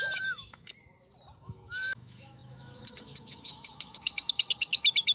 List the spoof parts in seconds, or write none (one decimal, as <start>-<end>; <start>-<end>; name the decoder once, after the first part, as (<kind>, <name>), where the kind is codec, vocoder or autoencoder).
0.0-0.7 (autoencoder, DAC-VAE); 1.4-5.1